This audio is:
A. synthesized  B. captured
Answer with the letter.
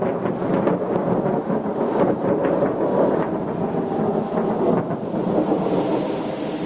B